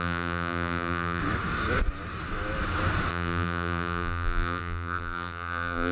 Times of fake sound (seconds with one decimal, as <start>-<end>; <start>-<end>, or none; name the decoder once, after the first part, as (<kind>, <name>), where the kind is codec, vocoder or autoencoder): 0.0-1.2 (vocoder, BigVGAN v2); 3.1-5.9